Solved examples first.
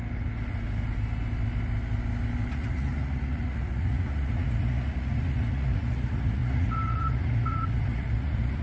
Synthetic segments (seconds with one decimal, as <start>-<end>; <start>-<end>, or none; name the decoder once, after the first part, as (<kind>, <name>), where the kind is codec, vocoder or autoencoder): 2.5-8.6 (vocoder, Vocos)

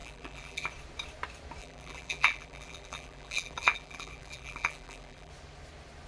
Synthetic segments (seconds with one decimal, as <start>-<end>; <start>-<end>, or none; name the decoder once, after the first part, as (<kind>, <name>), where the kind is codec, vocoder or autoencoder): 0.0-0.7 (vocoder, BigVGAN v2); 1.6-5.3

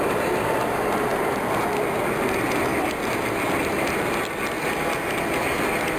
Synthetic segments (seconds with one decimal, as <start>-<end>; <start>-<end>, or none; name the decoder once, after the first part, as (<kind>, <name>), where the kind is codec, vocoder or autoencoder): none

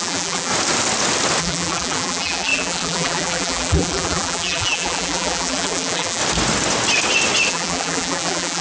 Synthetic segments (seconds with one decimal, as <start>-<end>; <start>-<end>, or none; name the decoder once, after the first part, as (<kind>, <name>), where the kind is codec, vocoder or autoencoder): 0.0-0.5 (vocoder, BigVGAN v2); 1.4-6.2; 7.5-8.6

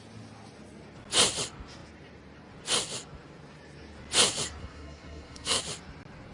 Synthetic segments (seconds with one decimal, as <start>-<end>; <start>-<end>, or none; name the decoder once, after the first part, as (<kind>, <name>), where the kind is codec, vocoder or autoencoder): 4.6-5.6 (codec, SNAC)

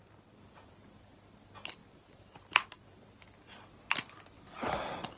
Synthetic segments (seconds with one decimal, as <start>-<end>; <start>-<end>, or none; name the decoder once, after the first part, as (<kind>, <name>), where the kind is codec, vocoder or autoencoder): none

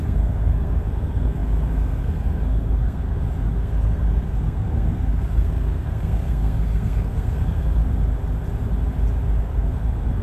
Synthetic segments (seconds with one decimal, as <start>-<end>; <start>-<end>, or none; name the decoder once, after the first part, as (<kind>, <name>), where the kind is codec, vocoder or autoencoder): 0.0-7.9 (codec, SNAC); 9.4-10.2